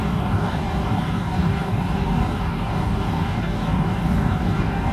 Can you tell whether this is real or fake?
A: fake